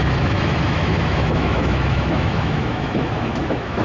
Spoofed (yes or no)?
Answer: yes